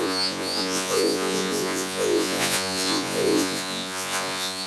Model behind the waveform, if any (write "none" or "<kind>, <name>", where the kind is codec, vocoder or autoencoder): vocoder, Vocos